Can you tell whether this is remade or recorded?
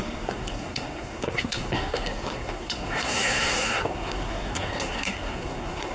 remade